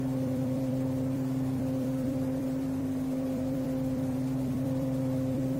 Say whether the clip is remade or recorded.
remade